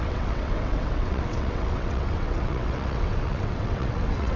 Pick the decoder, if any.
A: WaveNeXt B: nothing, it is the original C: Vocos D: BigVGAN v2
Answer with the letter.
A